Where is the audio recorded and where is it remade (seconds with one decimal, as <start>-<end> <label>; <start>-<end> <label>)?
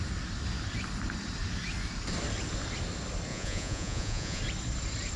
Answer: 0.0-3.3 recorded; 3.3-4.4 remade; 4.4-5.2 recorded